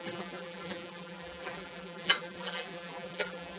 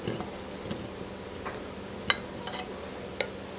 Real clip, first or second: second